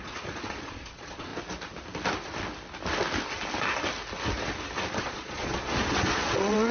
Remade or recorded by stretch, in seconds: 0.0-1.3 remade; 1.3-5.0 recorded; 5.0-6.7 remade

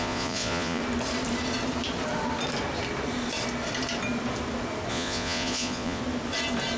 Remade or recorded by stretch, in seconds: 0.0-0.8 remade; 0.8-4.9 recorded; 4.9-6.0 remade; 6.0-6.8 recorded